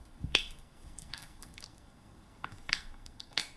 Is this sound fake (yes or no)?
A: yes